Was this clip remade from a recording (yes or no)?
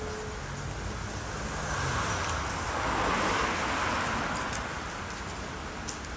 no